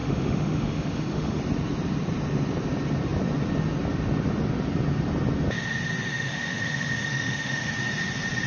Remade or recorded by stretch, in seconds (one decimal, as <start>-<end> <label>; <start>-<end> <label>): 0.0-1.4 remade; 1.4-6.1 recorded; 6.1-7.7 remade; 7.7-8.5 recorded